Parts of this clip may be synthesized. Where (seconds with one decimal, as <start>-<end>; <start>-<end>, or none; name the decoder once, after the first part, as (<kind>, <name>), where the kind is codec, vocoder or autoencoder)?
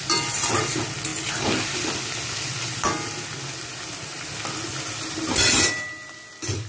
none